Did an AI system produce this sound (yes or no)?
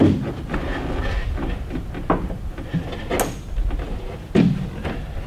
no